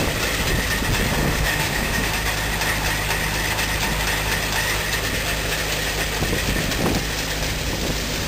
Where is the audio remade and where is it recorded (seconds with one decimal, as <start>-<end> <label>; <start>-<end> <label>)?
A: 0.0-1.2 recorded; 1.2-2.1 remade; 2.1-8.3 recorded